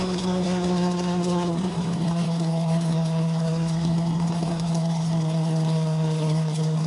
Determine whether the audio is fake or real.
fake